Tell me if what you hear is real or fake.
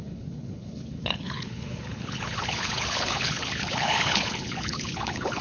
fake